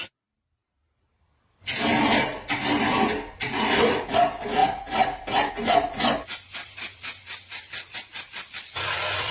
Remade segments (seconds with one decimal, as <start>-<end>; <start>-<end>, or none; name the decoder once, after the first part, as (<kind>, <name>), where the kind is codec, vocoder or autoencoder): none